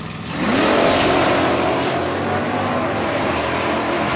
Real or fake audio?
fake